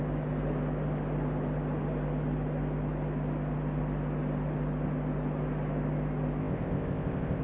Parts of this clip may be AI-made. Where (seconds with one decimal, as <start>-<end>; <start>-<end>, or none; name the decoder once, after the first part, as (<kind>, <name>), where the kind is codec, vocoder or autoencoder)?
6.4-7.4 (codec, ZipCodec)

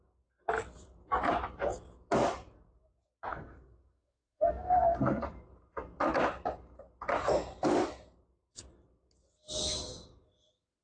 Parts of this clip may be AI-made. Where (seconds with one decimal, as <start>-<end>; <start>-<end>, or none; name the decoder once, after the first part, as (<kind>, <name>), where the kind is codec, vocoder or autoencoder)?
3.3-5.3 (codec, SNAC)

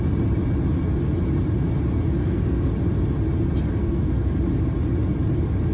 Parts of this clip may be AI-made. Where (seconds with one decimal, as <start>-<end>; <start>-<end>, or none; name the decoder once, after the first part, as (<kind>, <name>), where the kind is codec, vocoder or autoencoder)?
2.2-2.7 (codec, SNAC); 3.8-4.3

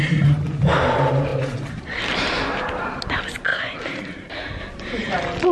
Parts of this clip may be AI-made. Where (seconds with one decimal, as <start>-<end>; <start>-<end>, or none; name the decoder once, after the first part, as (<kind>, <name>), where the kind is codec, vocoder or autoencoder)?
none

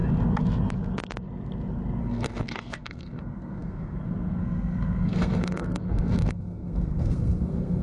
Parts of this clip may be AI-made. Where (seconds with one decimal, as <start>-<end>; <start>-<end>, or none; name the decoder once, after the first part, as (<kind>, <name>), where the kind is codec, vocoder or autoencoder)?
2.0-7.8 (codec, SNAC)